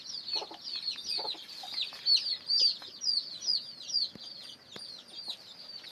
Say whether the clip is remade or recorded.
recorded